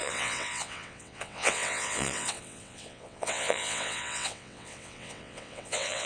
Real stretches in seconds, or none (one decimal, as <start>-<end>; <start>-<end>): none

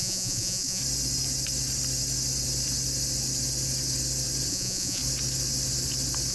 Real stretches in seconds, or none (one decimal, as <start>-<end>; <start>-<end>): 0.8-4.5; 5.0-6.3